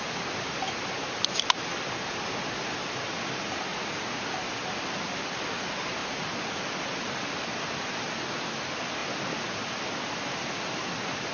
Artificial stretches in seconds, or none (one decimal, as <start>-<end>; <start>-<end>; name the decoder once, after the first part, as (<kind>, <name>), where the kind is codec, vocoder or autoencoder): 3.7-4.3 (vocoder, Vocos); 6.0-6.6